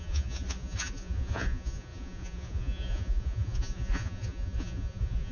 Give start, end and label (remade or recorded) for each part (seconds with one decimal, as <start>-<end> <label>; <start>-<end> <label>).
0.0-5.3 remade